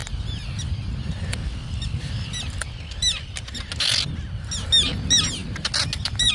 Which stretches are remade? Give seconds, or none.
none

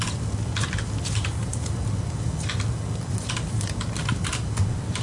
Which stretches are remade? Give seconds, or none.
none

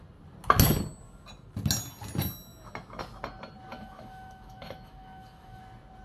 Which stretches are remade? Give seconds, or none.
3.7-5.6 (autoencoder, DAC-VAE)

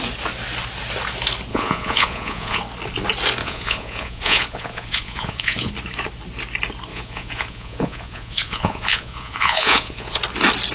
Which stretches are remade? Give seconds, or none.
1.5-2.6 (vocoder, Vocos); 3.4-5.7; 6.9-10.2

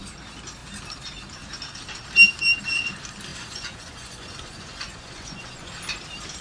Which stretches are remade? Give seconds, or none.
3.3-5.7 (vocoder, Vocos)

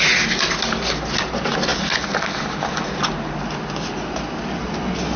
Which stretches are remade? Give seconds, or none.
none

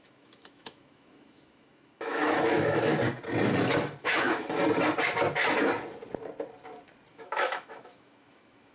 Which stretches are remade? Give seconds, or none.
0.0-2.9 (autoencoder, DAC-VAE); 4.0-4.6; 7.1-8.7